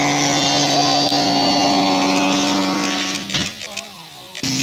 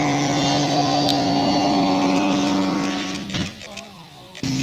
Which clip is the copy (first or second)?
second